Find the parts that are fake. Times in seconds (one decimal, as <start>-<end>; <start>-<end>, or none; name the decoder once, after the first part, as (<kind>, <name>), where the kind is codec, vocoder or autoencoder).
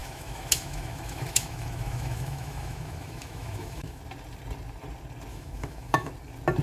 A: 0.0-4.0 (autoencoder, DAC-VAE); 5.3-6.1